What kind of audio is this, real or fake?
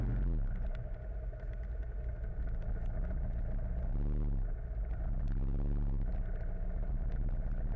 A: real